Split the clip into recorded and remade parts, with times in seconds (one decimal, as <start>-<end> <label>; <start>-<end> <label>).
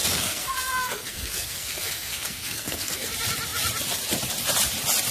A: 0.0-3.1 remade; 3.1-5.1 recorded